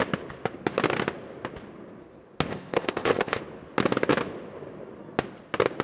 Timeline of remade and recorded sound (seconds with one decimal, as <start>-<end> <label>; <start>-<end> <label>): 0.0-2.5 recorded; 2.5-3.4 remade; 3.4-5.8 recorded